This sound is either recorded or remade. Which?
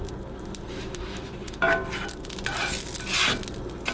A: recorded